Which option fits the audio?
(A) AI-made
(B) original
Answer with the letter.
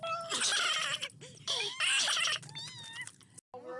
B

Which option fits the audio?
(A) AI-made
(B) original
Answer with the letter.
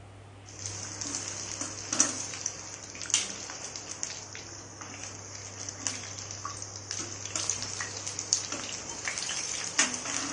B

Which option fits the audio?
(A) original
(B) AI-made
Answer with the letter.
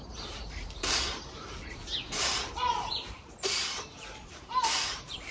B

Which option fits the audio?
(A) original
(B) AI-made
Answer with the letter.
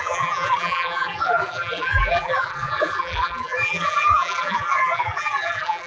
B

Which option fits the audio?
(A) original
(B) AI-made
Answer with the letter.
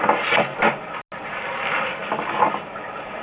A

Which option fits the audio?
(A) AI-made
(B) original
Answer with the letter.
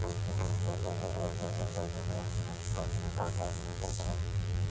A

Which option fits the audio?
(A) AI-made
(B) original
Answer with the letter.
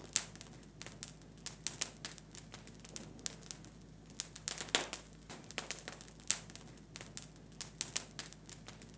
B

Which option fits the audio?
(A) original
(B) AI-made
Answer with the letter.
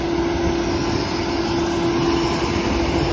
A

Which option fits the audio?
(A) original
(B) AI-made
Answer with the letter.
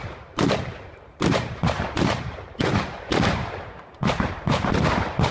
B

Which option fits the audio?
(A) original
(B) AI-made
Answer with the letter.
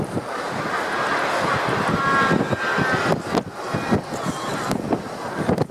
A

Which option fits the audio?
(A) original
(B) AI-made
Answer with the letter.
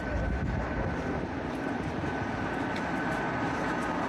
A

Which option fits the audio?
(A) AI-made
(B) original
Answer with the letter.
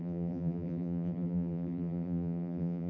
A